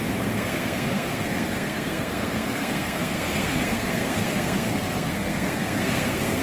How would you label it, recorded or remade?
remade